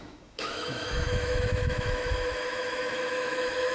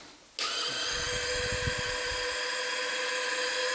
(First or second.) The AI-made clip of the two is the first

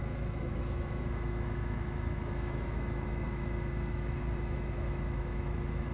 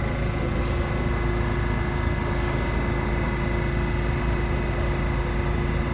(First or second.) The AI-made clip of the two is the first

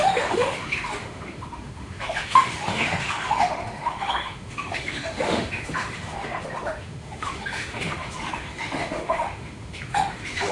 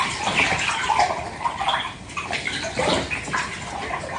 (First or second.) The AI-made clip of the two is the first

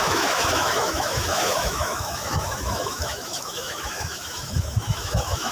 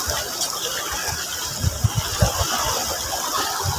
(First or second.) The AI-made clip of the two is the first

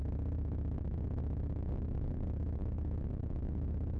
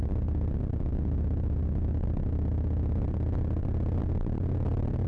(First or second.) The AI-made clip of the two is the first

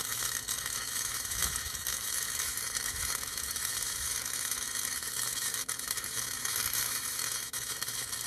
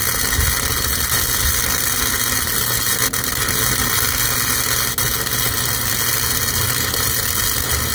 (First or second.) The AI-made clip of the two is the first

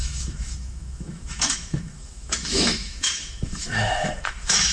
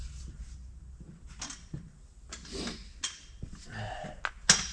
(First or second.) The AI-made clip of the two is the first